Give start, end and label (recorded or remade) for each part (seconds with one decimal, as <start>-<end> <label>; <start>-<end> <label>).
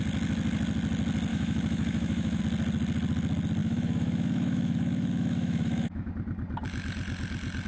0.0-1.3 recorded; 1.3-2.4 remade; 2.4-3.6 recorded; 3.6-6.1 remade; 6.1-7.7 recorded